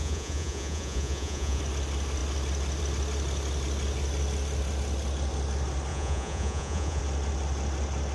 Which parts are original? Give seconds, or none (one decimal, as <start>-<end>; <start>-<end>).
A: 1.6-5.9; 7.0-8.1